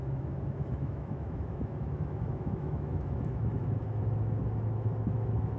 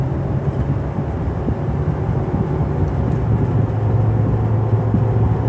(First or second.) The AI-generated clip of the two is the first